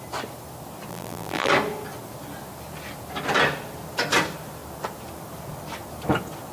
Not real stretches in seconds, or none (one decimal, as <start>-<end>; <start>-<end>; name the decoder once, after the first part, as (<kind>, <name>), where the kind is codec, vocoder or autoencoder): 0.9-1.5 (vocoder, BigVGAN v2)